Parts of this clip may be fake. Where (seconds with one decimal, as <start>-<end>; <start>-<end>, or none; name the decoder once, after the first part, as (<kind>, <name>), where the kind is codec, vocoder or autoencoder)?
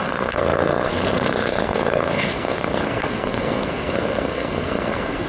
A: 0.0-5.3 (codec, SNAC)